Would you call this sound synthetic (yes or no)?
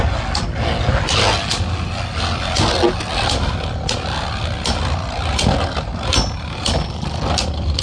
no